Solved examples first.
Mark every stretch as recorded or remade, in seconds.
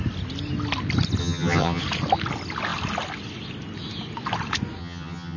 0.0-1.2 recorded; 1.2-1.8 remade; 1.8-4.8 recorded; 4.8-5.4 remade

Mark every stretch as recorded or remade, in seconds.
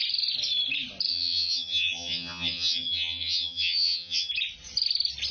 0.0-1.1 recorded; 1.1-4.3 remade; 4.3-5.3 recorded